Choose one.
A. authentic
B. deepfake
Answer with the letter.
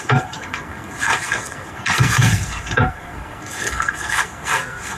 B